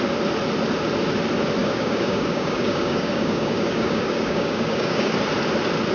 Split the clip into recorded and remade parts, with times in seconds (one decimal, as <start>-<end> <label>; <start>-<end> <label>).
0.0-1.6 recorded; 1.6-5.1 remade; 5.1-5.9 recorded